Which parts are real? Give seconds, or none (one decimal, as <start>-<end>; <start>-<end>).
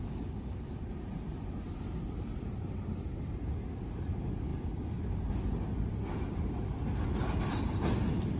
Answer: 0.0-8.4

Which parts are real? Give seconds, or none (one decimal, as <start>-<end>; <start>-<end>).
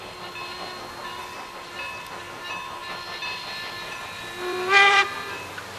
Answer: 0.0-1.2; 1.7-2.8; 5.0-5.8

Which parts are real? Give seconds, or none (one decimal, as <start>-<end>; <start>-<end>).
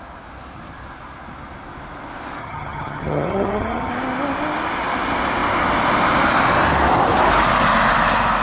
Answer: 0.0-2.4; 3.9-8.4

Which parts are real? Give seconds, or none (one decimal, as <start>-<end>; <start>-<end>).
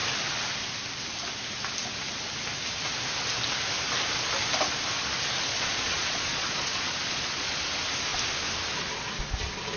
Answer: 0.0-5.5; 7.5-9.8